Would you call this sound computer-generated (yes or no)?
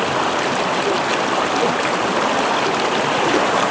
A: no